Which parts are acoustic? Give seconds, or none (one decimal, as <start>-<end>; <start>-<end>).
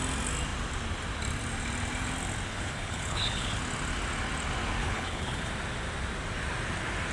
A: 0.0-2.5; 3.6-4.8; 5.5-7.1